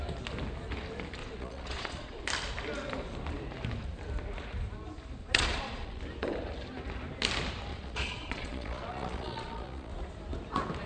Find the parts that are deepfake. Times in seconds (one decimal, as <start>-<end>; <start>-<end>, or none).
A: 1.2-2.2; 5.2-6.0; 7.7-9.9